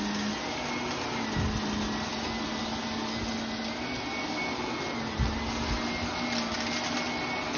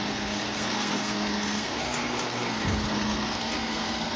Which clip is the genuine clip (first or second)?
first